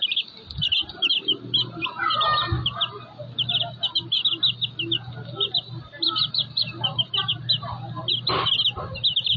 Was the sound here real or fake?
real